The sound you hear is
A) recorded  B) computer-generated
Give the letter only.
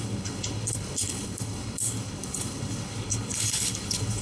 B